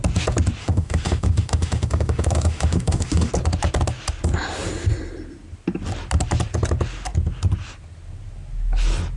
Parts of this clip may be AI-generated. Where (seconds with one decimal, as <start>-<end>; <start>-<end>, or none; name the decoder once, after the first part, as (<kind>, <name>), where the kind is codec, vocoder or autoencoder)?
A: 0.6-3.3 (autoencoder, DAC-VAE)